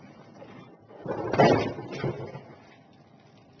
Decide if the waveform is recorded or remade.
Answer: recorded